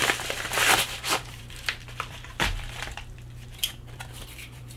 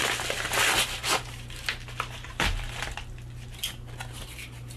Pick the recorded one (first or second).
second